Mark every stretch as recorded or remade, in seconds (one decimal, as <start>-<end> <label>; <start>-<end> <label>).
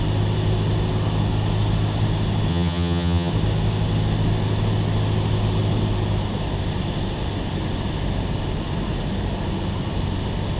0.0-2.5 recorded; 2.5-3.3 remade; 3.3-10.6 recorded